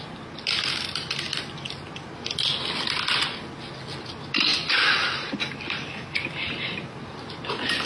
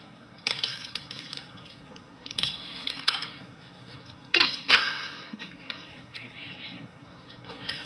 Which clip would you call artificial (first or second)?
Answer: second